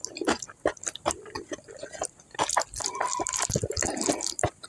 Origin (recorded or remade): recorded